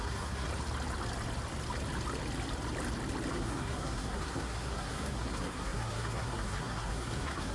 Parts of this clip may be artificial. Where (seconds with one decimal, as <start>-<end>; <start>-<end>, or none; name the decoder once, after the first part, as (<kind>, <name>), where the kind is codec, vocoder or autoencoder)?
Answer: 0.0-0.5 (codec, SNAC); 3.3-7.5